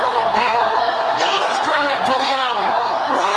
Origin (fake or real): fake